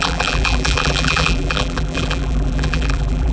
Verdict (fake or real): fake